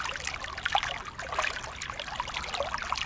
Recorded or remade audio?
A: recorded